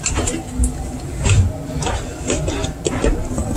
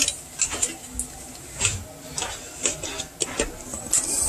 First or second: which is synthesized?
first